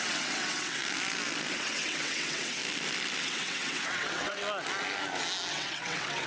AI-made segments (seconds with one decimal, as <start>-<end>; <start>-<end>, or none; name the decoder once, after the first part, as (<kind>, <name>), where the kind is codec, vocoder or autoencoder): 0.0-0.8 (vocoder, WaveNeXt); 1.5-2.6; 3.2-4.4; 5.5-6.3